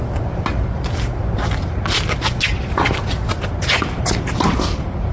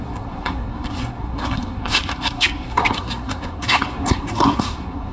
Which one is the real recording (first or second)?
first